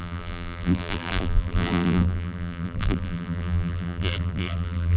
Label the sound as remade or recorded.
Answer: remade